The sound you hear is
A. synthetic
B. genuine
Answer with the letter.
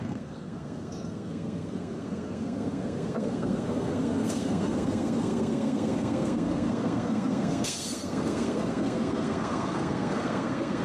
A